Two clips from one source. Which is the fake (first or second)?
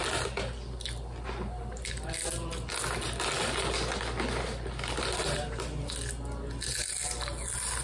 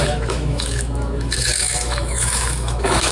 second